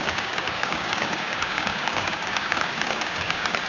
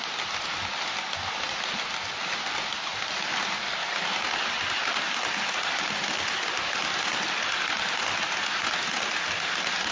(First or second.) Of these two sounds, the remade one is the first